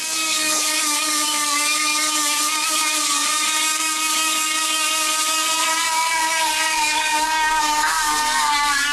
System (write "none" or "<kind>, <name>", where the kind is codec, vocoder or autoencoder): codec, DAC